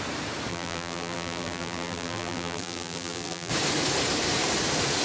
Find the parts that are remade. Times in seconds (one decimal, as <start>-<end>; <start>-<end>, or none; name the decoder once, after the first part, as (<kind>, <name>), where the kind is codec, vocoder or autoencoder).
0.5-3.5 (vocoder, BigVGAN v2)